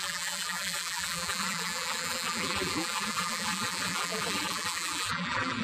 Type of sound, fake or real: fake